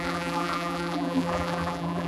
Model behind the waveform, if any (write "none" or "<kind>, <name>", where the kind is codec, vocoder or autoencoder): vocoder, BigVGAN v2